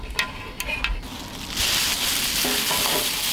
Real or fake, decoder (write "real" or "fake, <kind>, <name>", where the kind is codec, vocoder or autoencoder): real